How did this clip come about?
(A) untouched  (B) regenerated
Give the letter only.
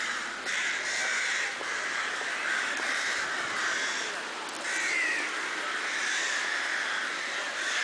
A